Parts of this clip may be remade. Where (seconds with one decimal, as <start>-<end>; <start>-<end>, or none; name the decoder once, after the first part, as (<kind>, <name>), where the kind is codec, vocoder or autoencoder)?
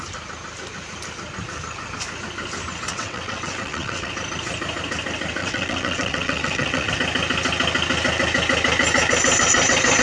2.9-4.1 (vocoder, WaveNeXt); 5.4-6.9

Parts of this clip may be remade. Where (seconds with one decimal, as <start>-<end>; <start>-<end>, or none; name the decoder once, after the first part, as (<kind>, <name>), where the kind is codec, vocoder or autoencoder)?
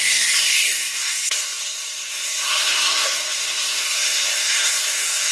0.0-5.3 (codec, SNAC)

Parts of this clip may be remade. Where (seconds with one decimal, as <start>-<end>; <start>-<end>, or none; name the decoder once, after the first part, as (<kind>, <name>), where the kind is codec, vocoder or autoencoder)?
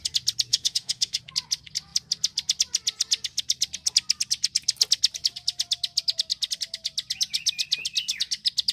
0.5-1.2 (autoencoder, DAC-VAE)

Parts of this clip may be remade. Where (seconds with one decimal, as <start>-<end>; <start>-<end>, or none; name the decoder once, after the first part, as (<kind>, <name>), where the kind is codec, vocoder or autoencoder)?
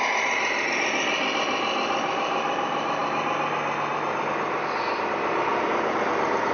none